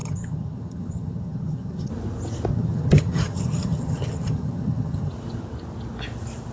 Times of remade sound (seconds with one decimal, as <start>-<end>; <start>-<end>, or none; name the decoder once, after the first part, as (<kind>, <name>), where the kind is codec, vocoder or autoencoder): 0.0-1.9 (vocoder, HiFi-GAN); 2.5-5.1